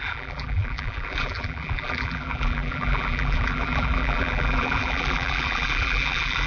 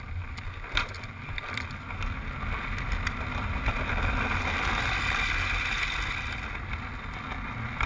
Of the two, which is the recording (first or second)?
second